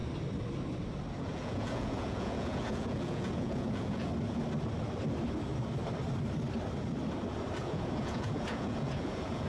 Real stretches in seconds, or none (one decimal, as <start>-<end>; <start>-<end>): 0.0-1.2; 4.1-7.6